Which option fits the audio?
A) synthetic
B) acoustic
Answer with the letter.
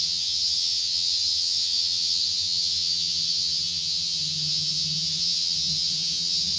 A